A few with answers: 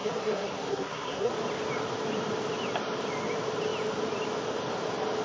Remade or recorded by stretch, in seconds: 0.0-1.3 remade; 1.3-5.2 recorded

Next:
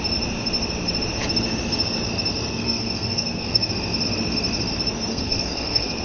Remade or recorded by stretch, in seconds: 0.0-2.5 recorded; 2.5-3.7 remade; 3.7-5.1 recorded; 5.1-6.0 remade